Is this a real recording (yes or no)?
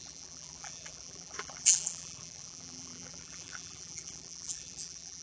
no